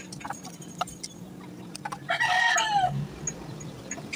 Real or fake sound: fake